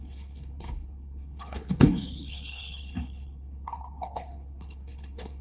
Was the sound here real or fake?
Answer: fake